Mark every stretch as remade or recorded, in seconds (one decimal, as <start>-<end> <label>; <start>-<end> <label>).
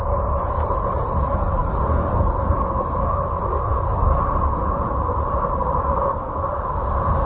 0.0-5.9 recorded; 5.9-6.4 remade; 6.4-7.3 recorded